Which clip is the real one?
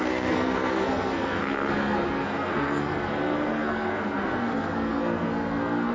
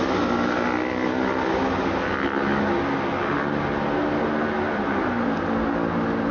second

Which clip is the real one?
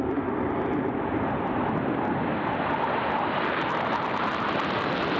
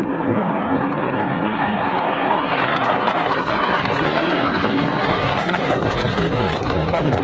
first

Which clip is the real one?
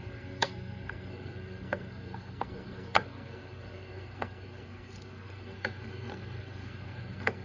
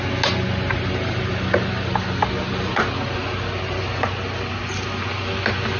second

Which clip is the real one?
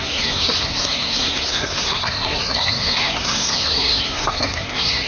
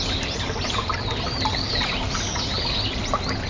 second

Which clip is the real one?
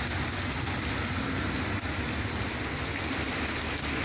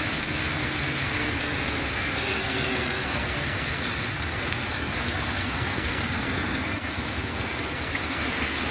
first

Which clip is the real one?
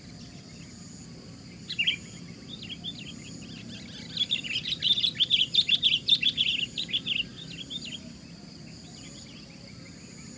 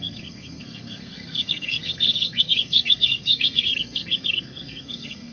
first